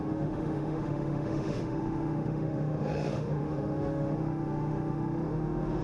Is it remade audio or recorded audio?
remade